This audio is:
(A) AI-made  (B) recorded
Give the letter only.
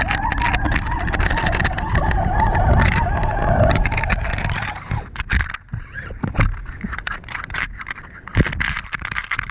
B